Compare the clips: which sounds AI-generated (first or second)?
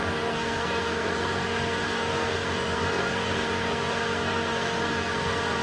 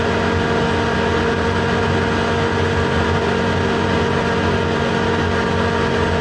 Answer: first